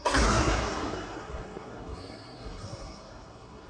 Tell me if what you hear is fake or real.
fake